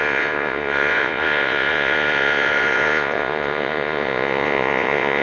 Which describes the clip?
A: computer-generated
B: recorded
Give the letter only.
A